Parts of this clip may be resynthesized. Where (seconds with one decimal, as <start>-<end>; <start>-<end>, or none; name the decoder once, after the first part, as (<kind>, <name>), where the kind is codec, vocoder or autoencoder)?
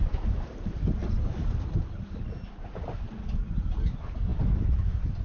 none